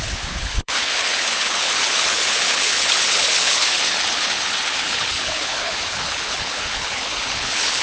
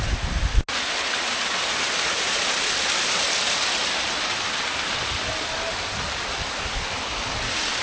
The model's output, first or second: first